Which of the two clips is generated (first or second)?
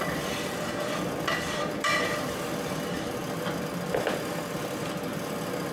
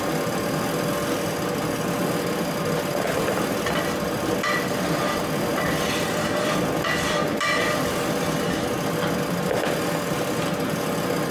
first